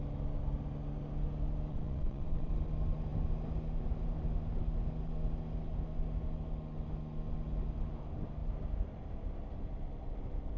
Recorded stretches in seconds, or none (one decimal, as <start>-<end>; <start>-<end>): 0.0-1.7; 2.5-10.6